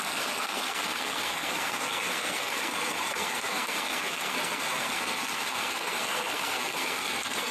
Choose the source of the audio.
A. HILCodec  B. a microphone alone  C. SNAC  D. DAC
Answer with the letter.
C